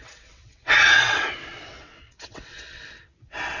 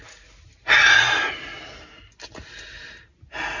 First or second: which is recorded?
second